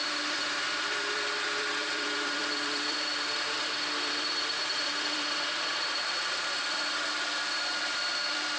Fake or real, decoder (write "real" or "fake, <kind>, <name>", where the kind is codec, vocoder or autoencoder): fake, vocoder, BigVGAN v2